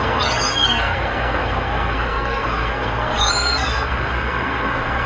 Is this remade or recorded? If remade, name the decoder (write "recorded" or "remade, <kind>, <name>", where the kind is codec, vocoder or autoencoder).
remade, codec, SNAC